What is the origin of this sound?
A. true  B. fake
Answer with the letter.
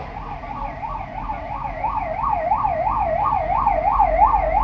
A